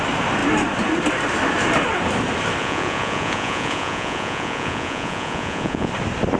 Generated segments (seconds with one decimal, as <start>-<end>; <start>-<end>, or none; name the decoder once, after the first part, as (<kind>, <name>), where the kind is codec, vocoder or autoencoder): 2.6-5.9 (vocoder, Vocos)

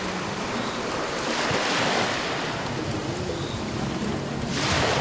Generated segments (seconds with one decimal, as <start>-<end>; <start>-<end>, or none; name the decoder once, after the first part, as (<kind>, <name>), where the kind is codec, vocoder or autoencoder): none

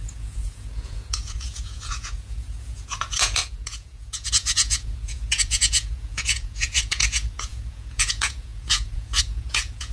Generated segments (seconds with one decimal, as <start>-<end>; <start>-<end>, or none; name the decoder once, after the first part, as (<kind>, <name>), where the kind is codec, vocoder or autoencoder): 0.0-9.9 (vocoder, Vocos)

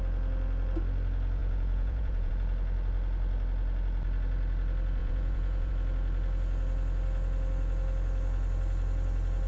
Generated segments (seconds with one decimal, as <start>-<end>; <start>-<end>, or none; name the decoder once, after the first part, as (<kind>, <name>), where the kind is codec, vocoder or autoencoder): 1.4-2.3 (vocoder, Vocos); 5.0-5.7

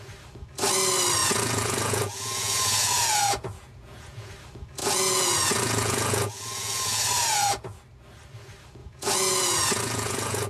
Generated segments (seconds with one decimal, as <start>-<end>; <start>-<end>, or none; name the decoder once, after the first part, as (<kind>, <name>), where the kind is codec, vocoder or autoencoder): 1.2-4.3 (vocoder, Vocos); 4.8-7.8; 8.8-10.5

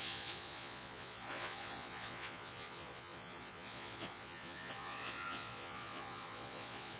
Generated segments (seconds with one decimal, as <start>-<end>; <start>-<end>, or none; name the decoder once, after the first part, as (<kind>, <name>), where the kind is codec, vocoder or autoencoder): 0.0-7.0 (vocoder, Vocos)